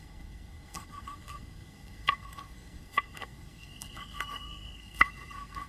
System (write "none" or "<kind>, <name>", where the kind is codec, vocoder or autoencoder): codec, SNAC